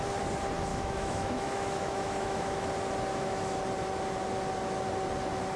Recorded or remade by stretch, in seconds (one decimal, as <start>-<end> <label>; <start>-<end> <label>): 0.0-0.7 recorded; 0.7-2.7 remade; 2.7-3.1 recorded; 3.1-3.6 remade; 3.6-5.6 recorded